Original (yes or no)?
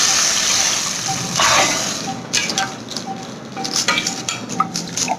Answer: yes